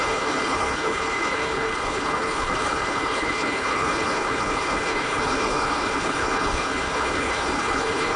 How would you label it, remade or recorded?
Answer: remade